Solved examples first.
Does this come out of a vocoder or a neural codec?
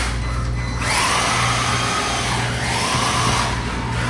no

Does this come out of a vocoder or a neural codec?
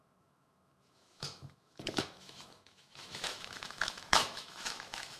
yes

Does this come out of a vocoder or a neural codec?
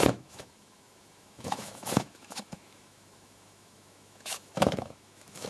yes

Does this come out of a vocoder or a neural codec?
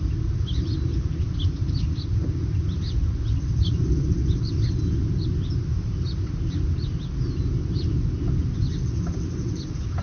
no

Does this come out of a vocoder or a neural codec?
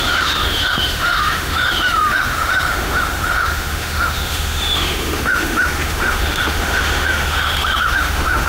yes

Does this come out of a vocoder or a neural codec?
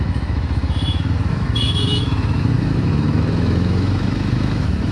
yes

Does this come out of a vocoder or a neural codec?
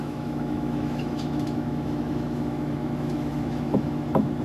yes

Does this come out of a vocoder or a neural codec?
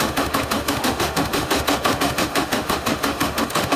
yes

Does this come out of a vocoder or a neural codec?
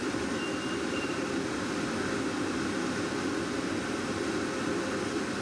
no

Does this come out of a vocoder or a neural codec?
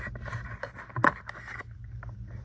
no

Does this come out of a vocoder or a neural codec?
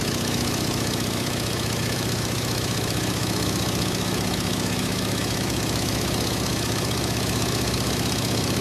yes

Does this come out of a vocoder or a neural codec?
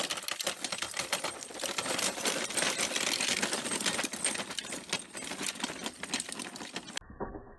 no